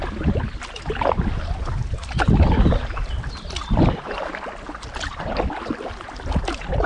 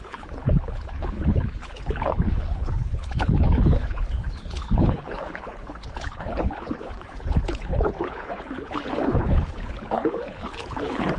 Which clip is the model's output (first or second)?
second